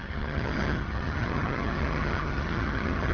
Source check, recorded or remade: remade